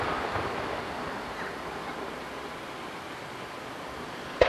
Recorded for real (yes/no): yes